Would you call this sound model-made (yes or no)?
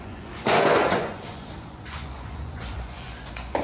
yes